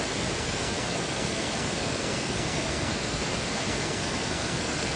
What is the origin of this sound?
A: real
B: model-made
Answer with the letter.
B